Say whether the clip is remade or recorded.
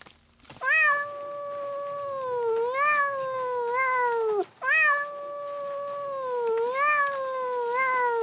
recorded